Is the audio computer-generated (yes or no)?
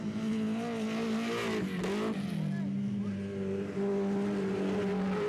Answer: no